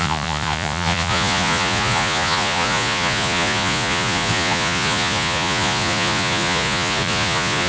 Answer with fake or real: fake